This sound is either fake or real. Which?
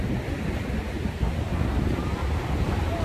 fake